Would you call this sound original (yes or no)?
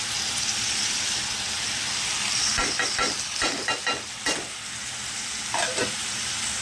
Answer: yes